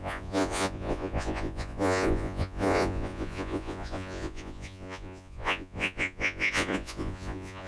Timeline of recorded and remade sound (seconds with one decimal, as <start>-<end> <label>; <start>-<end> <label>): 0.0-7.7 remade